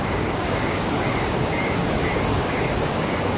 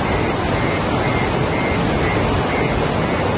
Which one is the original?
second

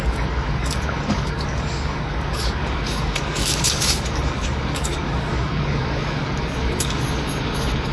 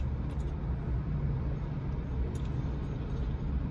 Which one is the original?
second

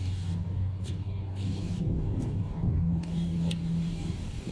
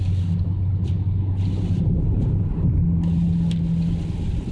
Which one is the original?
second